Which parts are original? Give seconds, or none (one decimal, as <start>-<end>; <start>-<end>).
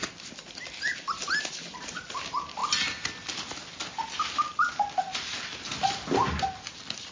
0.0-7.1